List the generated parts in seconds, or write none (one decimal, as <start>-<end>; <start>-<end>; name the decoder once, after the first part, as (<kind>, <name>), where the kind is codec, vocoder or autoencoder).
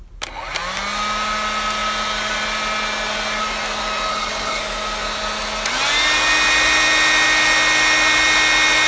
4.1-4.6 (codec, HILCodec)